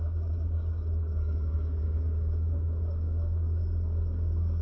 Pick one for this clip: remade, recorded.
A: remade